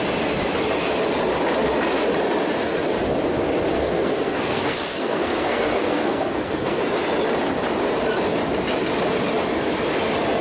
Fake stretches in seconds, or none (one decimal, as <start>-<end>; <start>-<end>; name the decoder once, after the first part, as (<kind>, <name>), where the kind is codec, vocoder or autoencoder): 3.7-6.8 (codec, SNAC)